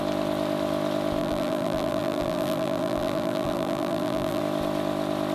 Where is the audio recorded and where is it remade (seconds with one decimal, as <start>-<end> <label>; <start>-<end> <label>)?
0.0-1.2 recorded; 1.2-4.4 remade; 4.4-5.3 recorded